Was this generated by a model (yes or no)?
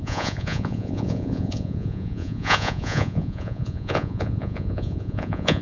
yes